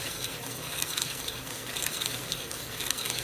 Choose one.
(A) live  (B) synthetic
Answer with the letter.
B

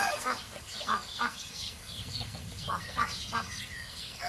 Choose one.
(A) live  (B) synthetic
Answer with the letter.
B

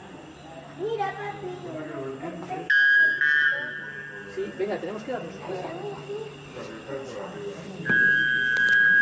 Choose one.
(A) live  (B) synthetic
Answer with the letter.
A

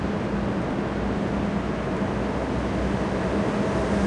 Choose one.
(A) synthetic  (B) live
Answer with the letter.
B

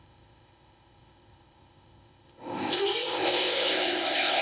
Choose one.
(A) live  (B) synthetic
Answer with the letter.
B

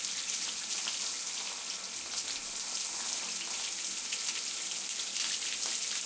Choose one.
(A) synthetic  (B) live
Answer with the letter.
B